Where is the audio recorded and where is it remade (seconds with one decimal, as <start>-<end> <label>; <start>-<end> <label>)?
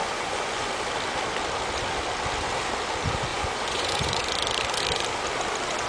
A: 0.0-0.7 remade; 0.7-3.3 recorded; 3.3-4.2 remade; 4.2-5.9 recorded